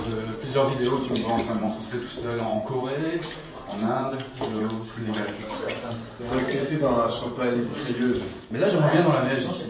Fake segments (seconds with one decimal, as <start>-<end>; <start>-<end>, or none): 1.6-4.6; 5.0-5.6; 7.7-8.7